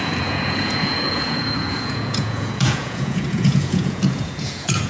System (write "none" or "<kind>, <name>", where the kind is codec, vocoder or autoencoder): vocoder, Vocos